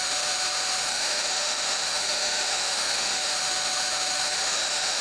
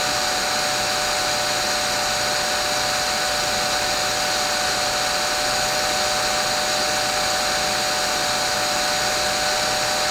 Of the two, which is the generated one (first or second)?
first